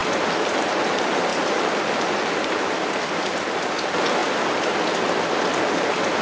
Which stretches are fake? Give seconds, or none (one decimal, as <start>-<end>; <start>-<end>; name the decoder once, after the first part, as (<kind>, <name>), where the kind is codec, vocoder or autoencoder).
none